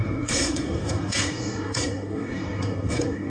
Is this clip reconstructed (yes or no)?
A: yes